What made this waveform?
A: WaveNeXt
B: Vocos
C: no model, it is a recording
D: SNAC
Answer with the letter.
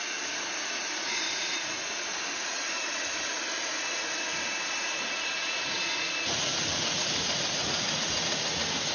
B